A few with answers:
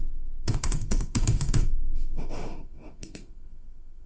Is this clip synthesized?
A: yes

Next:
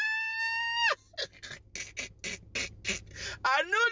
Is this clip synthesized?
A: no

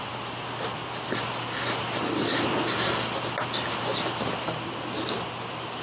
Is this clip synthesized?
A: no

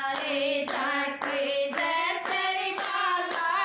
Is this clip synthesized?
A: no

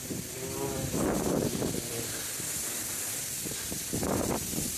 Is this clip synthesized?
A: yes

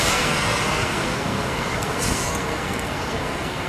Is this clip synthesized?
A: yes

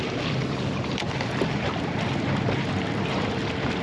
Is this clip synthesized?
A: yes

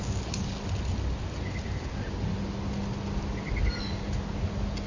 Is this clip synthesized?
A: no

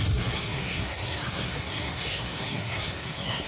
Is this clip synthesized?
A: yes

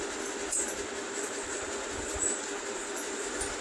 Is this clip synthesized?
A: no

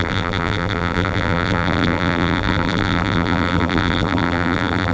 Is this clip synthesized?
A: yes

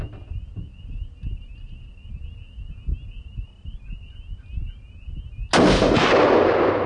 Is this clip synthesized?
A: no